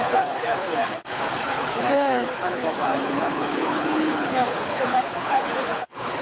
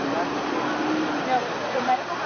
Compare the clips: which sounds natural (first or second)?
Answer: second